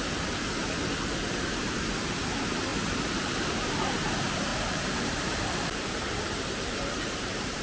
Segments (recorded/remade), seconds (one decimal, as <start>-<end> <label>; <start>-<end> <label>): 0.0-2.7 recorded; 2.7-3.8 remade; 3.8-4.5 recorded; 4.5-7.6 remade